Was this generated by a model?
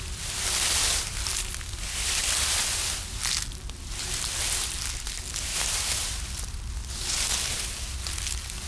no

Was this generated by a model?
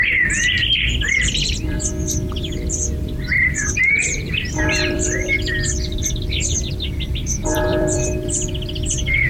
yes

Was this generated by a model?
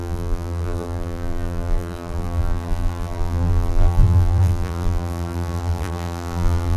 yes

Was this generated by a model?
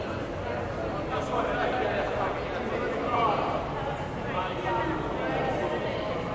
no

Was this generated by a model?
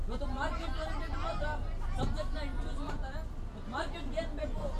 no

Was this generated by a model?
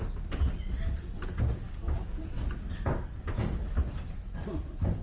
no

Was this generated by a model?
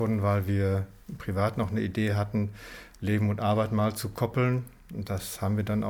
no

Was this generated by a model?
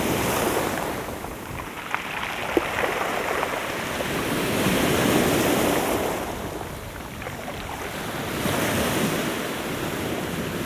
no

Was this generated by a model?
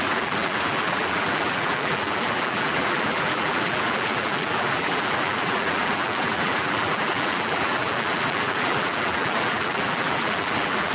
yes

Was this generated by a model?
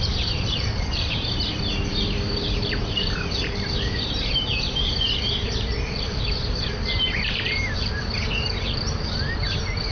yes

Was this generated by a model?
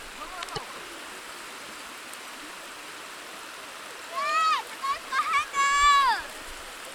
no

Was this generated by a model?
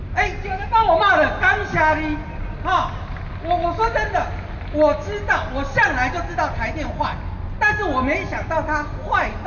no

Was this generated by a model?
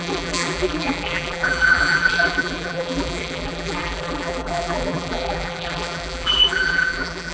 yes